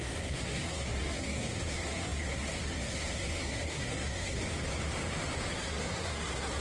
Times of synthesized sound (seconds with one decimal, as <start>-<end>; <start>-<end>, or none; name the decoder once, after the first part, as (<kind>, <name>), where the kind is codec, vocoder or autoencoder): 0.0-4.4 (codec, SNAC); 5.5-6.6